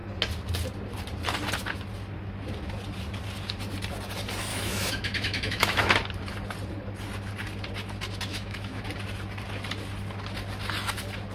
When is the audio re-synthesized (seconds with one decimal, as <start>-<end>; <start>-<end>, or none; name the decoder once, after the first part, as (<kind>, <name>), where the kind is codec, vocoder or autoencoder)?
4.5-5.9 (autoencoder, DAC-VAE); 8.3-8.8